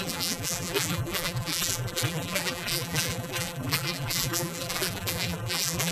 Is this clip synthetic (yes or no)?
yes